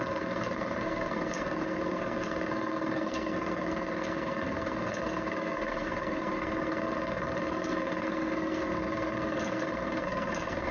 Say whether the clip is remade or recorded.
remade